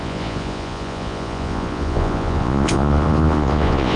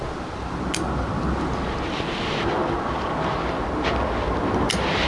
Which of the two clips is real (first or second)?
second